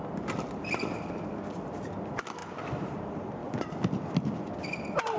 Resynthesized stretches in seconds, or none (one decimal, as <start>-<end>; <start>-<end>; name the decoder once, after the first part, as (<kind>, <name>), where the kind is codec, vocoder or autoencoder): 2.4-3.0 (vocoder, BigVGAN v2); 3.4-4.1